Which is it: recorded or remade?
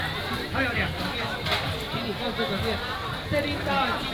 recorded